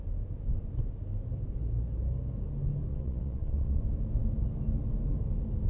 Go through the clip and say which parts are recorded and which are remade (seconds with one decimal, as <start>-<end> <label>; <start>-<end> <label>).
0.0-2.9 recorded; 2.9-3.8 remade; 3.8-5.7 recorded